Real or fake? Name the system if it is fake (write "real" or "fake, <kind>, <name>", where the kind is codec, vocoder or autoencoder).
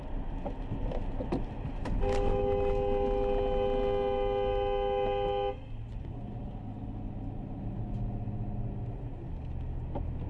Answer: real